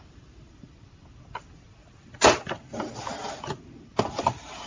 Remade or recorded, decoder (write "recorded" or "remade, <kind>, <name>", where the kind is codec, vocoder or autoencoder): recorded